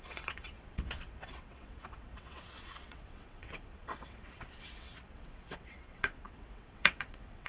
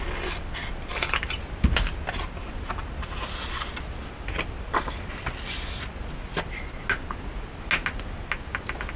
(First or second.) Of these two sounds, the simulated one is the first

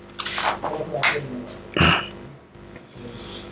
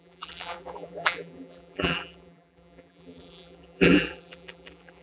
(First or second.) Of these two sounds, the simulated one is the second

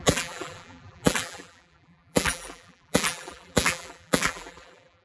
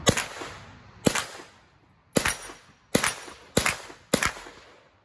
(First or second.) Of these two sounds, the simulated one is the first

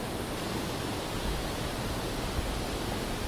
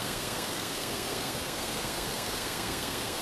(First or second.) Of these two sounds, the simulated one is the second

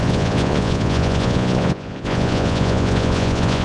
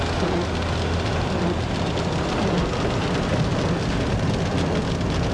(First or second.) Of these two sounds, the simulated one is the first